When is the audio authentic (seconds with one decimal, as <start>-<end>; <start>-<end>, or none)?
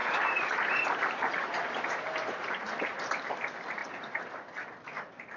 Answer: 3.2-3.8; 4.7-5.4